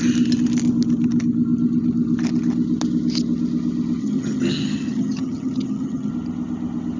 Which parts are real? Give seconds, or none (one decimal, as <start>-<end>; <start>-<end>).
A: 0.0-4.0; 6.1-7.0